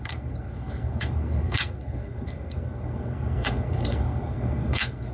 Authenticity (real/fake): fake